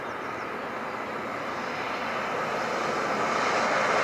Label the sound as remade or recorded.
recorded